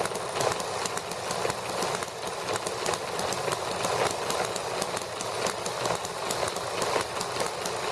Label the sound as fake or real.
real